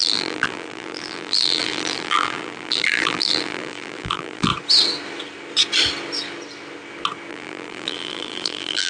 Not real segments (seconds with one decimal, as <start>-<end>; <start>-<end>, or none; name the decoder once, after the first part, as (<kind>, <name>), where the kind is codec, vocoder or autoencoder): 0.0-4.5 (vocoder, BigVGAN v2); 7.3-8.9